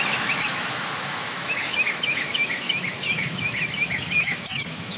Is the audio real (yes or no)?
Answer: no